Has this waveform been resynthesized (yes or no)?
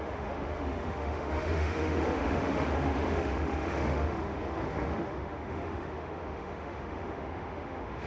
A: yes